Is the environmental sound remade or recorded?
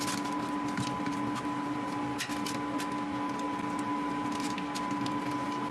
recorded